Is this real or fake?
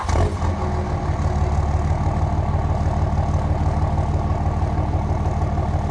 real